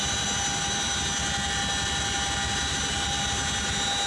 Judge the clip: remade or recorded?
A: recorded